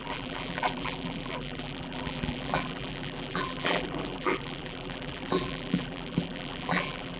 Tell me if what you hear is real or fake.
fake